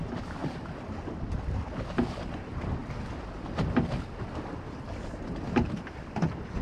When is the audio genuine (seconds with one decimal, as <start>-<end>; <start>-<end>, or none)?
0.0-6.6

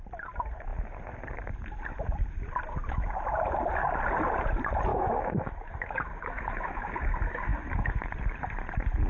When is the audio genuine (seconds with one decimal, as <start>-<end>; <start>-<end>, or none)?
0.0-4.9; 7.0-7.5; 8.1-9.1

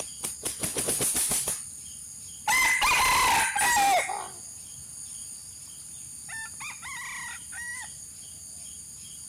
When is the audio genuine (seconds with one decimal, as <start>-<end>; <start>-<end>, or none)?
0.0-9.3

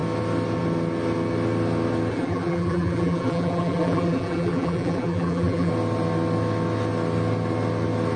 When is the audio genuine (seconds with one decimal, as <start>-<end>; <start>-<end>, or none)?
0.0-2.1; 5.7-8.2